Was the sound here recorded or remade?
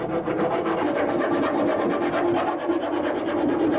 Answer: recorded